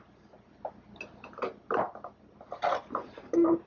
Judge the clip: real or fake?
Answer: real